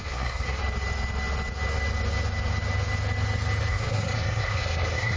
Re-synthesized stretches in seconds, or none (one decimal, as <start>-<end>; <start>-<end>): 0.0-0.6; 3.7-5.2